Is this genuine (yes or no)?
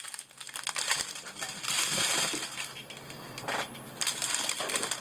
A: no